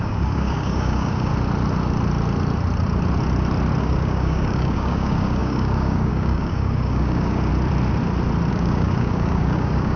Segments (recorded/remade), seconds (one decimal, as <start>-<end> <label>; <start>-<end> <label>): 0.0-1.3 remade; 1.3-3.8 recorded; 3.8-7.5 remade; 7.5-8.5 recorded; 8.5-10.0 remade